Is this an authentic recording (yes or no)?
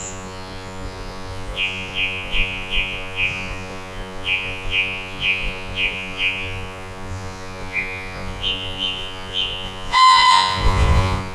no